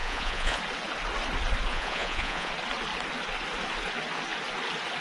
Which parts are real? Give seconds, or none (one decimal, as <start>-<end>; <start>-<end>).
0.6-1.7; 2.5-5.0